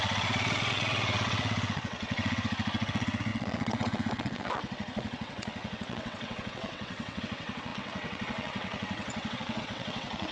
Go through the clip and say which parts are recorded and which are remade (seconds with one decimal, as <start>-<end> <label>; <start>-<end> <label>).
0.0-10.3 remade